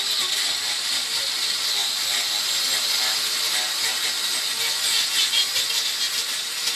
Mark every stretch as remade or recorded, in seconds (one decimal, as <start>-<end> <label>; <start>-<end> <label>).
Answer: 0.0-6.8 recorded